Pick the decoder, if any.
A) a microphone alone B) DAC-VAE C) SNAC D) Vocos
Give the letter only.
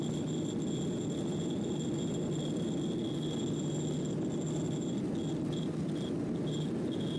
A